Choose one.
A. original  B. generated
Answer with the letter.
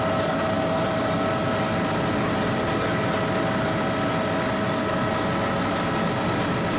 A